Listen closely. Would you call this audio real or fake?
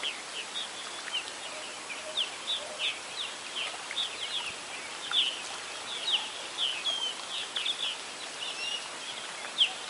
real